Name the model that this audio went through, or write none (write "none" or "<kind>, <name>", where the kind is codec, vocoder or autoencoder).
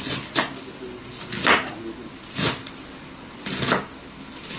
none